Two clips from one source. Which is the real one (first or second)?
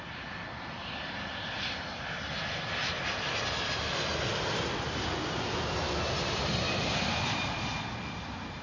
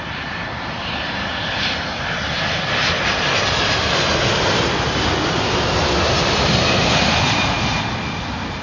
first